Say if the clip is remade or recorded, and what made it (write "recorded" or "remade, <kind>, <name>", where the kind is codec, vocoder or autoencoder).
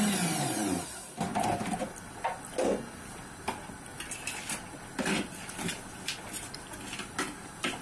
recorded